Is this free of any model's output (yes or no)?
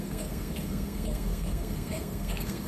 no